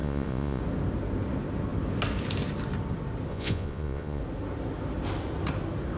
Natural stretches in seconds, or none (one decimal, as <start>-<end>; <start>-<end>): 0.6-3.3; 4.2-6.0